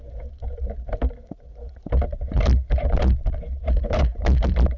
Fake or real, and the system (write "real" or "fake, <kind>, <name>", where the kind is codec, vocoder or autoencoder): fake, vocoder, BigVGAN v2